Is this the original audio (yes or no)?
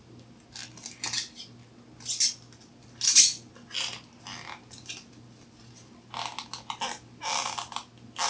yes